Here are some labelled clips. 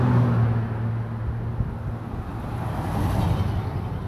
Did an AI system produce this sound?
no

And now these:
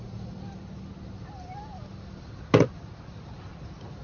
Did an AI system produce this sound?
no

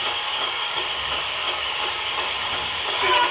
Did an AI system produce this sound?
yes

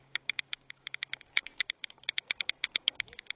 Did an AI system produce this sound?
yes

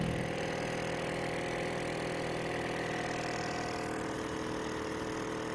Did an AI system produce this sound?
no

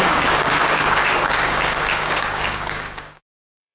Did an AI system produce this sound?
yes